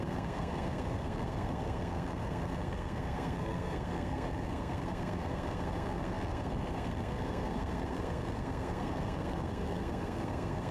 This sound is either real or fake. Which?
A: fake